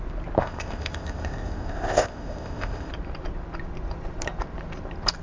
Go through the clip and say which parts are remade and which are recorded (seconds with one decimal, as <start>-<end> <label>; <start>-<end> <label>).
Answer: 0.0-0.4 recorded; 0.4-2.9 remade; 2.9-5.2 recorded